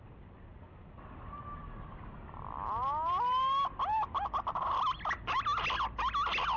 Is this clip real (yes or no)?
yes